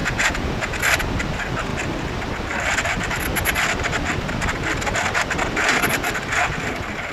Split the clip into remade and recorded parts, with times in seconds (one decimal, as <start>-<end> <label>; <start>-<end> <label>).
0.0-0.8 remade; 0.8-7.1 recorded